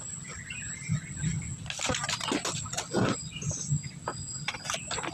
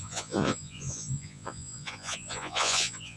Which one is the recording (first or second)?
first